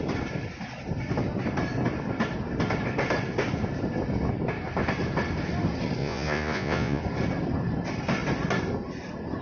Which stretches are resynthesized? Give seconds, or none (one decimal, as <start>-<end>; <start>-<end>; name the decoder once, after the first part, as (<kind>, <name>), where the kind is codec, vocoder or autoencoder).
6.0-7.0 (vocoder, Vocos)